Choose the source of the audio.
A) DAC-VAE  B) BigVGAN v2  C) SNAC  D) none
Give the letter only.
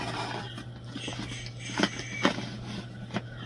D